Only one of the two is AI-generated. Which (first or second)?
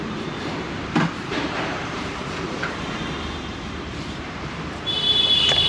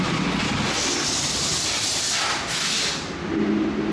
first